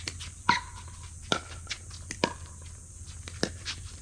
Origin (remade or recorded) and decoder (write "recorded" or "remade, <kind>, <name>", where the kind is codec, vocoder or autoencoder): recorded